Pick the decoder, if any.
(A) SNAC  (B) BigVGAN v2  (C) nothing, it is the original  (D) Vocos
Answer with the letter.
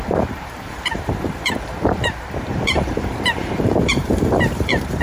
B